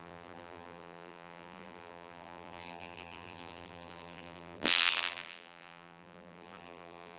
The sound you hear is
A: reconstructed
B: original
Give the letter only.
A